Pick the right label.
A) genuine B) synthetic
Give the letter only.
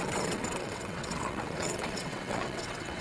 B